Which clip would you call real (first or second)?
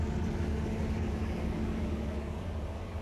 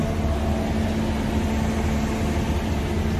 second